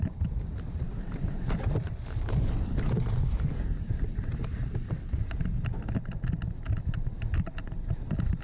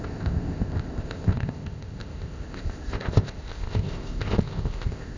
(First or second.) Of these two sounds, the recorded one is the first